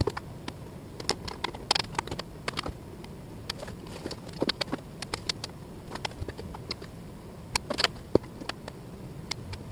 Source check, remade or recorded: recorded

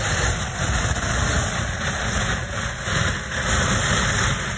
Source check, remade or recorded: recorded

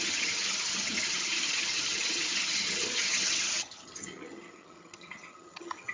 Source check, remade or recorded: remade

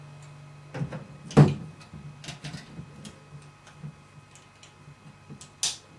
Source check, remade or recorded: recorded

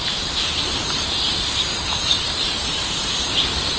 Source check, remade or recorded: remade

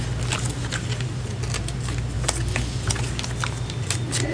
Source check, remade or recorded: recorded